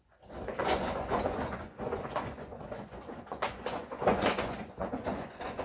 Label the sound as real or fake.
fake